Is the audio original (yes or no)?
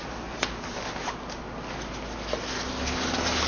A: yes